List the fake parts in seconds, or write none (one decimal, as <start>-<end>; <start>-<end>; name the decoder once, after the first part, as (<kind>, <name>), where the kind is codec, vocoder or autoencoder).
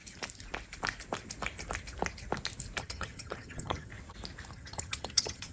2.8-3.9 (vocoder, HiFi-GAN); 4.5-5.5